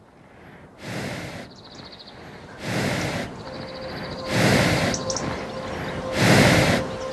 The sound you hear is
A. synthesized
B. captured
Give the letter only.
B